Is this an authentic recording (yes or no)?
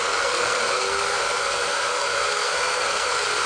no